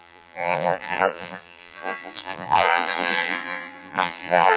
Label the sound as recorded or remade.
remade